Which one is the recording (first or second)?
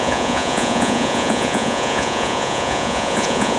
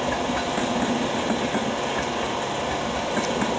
second